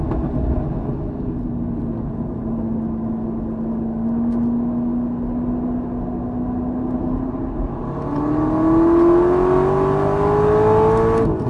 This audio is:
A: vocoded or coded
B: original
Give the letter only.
B